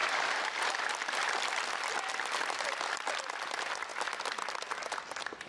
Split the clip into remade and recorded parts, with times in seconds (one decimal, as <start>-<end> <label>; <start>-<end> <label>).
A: 0.0-3.3 remade; 3.3-3.9 recorded; 3.9-5.5 remade